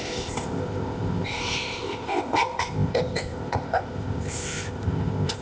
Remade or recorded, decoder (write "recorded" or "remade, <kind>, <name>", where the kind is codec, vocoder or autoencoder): remade, codec, ZipCodec